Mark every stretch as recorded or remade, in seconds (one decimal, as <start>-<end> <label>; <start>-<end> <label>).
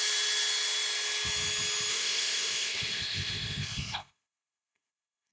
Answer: 0.0-1.9 recorded; 1.9-5.3 remade